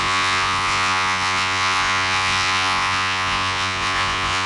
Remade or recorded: remade